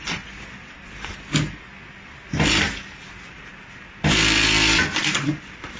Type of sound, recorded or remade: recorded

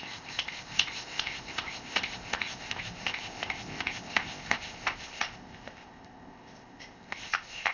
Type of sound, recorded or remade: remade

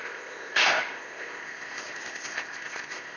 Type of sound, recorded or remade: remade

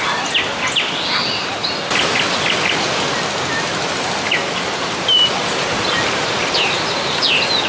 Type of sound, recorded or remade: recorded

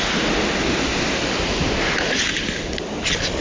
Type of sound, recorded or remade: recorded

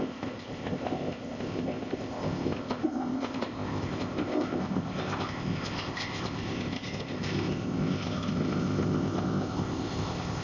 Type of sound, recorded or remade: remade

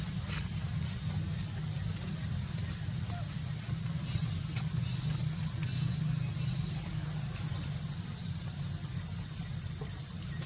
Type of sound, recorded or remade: recorded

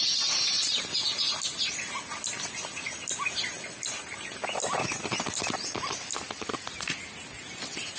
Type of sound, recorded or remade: recorded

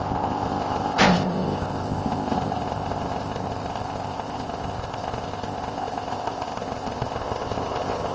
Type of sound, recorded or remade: remade